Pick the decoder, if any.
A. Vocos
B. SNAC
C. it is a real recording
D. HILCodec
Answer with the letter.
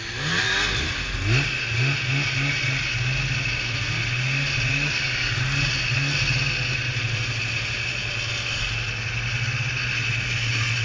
C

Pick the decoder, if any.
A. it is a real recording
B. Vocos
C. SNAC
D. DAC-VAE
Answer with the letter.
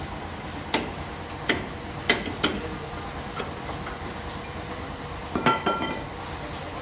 A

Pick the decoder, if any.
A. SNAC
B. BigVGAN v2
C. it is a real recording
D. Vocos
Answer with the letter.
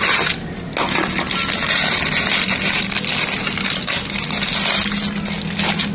C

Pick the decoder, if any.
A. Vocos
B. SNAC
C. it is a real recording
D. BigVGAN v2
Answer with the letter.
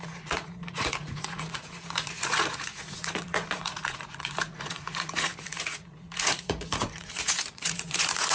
A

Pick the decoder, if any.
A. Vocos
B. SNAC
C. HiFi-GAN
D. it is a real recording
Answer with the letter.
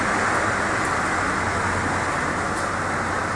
D